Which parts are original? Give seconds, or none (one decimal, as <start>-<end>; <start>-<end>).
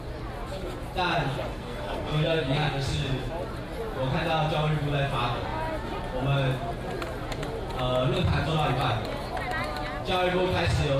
0.0-1.5; 3.3-11.0